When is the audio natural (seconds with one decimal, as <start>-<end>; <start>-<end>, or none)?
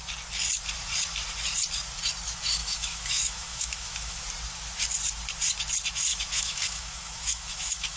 0.0-2.6; 4.2-6.1